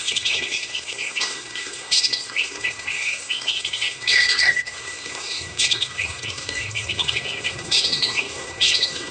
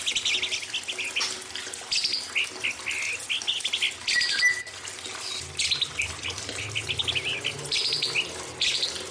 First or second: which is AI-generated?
first